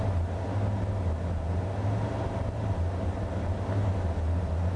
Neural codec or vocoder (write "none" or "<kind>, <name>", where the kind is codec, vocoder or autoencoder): none